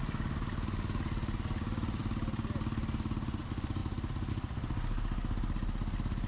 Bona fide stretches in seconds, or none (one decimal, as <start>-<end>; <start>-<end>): 0.0-6.3